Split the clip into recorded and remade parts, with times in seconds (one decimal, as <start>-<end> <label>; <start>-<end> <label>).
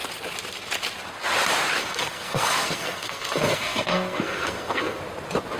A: 0.0-1.8 recorded; 1.8-5.0 remade; 5.0-5.6 recorded